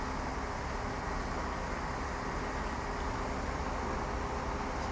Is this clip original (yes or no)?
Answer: yes